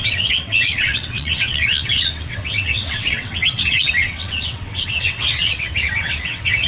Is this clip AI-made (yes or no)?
yes